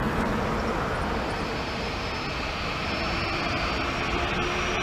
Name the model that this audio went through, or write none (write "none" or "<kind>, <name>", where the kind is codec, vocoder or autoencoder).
none